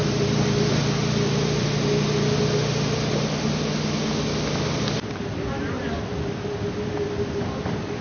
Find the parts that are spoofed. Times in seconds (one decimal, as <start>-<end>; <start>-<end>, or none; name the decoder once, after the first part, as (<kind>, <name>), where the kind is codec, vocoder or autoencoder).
0.0-1.7 (vocoder, BigVGAN v2)